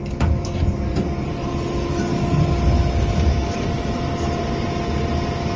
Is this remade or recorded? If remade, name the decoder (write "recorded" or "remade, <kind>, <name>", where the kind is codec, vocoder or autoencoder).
recorded